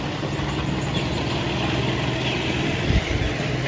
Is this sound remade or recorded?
recorded